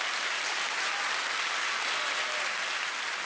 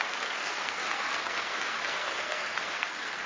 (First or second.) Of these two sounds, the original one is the first